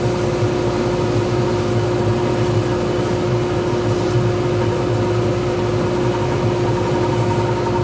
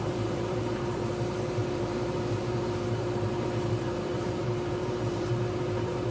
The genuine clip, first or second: first